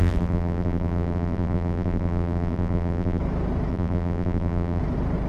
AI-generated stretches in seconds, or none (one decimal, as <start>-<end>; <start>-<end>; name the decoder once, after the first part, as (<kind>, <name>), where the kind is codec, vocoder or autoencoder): 0.0-3.2 (vocoder, BigVGAN v2); 3.7-4.8